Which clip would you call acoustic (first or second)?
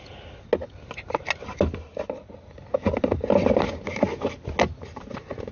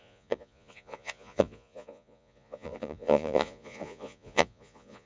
first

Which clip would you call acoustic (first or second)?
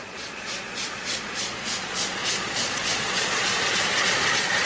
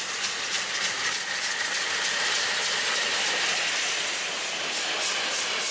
second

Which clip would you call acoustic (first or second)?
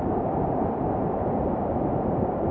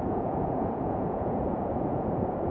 first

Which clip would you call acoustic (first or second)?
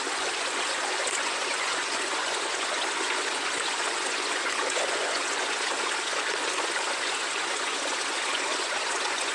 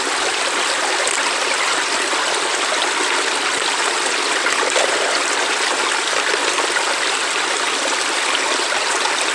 second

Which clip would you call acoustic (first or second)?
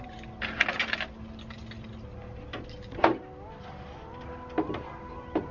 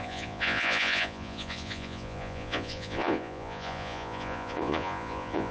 first